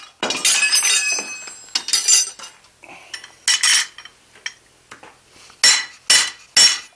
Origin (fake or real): real